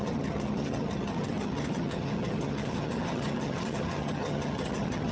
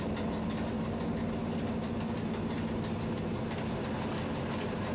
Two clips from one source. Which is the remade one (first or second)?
first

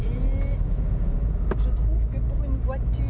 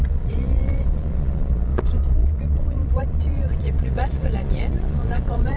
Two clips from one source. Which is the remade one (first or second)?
second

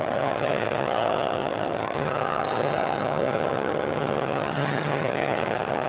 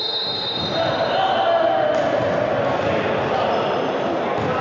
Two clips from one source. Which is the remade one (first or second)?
first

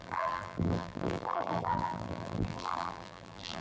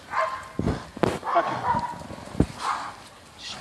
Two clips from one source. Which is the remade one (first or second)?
first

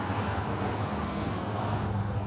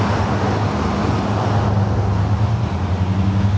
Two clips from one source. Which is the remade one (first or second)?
first